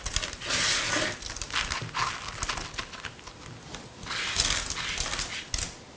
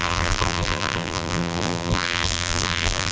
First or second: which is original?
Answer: first